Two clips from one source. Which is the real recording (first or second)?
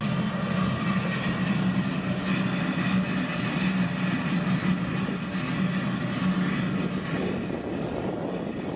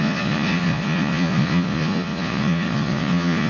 first